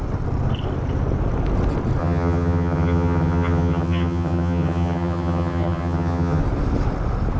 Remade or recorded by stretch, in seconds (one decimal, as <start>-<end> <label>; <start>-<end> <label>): 0.0-2.0 recorded; 2.0-6.4 remade; 6.4-7.4 recorded